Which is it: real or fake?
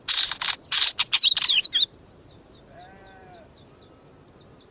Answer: real